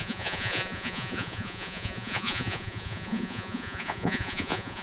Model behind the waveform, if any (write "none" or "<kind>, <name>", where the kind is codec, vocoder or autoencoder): vocoder, Vocos